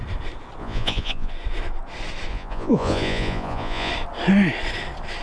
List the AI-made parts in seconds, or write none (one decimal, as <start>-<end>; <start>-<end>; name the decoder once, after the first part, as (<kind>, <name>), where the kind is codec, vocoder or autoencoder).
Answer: 0.6-1.3 (vocoder, Vocos); 2.3-3.9